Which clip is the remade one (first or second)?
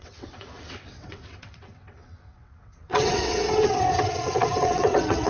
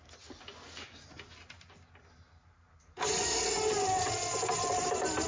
first